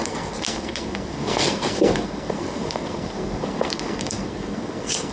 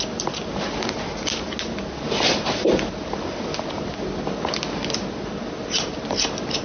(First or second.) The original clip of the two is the second